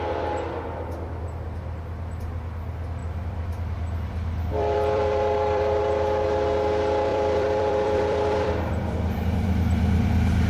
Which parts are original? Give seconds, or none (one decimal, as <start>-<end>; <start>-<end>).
0.0-3.0; 5.8-7.1